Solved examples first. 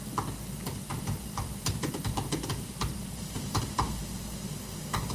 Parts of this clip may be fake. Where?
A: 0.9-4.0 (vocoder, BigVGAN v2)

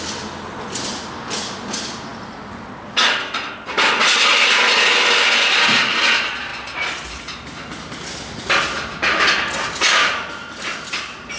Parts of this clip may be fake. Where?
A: none

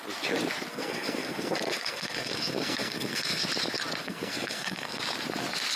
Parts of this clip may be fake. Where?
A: 0.7-3.4 (codec, SNAC); 4.0-5.0

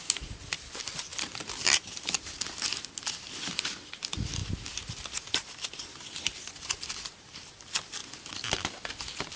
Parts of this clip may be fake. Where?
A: 1.1-2.5 (vocoder, BigVGAN v2); 4.4-7.5